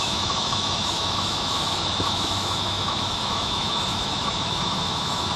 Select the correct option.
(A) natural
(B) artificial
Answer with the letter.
B